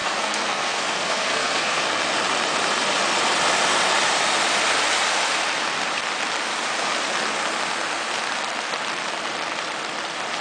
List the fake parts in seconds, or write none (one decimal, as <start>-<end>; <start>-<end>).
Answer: 0.0-1.8